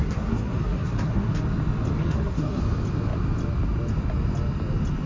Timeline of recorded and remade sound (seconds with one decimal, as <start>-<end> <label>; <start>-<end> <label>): 0.0-1.3 remade; 1.3-2.0 recorded; 2.0-2.6 remade; 2.6-5.1 recorded